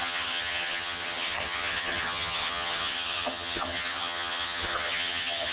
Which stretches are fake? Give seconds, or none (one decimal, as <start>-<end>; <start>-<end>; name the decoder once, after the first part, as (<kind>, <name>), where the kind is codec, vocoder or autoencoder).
0.0-5.5 (vocoder, HiFi-GAN)